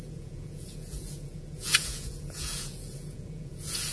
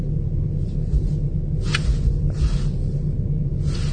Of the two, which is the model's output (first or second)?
first